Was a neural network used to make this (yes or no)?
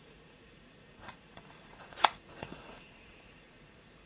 yes